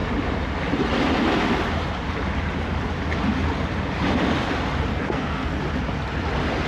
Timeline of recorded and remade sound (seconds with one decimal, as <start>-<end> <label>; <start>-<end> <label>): 0.0-4.9 recorded; 4.9-5.6 remade; 5.6-6.7 recorded